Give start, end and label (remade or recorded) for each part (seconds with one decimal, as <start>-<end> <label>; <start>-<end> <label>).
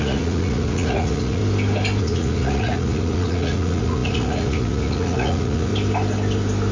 0.0-1.4 remade; 1.4-2.0 recorded; 2.0-5.7 remade; 5.7-6.7 recorded